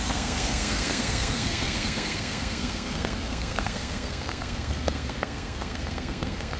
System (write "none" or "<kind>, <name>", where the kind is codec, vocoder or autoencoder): codec, SNAC